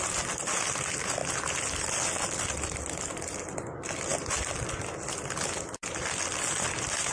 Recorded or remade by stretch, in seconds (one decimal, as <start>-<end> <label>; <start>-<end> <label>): 0.0-7.1 recorded